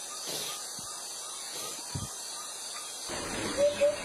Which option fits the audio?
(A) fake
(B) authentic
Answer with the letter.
B